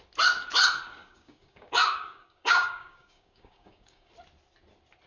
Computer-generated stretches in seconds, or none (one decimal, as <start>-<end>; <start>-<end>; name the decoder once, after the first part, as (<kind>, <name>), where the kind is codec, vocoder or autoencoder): 1.0-4.1 (codec, DAC)